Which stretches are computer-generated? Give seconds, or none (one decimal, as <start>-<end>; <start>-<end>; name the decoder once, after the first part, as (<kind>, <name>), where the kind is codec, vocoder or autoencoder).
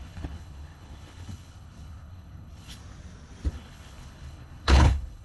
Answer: 0.0-2.8 (codec, HILCodec); 3.5-5.2